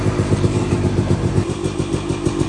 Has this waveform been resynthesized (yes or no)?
yes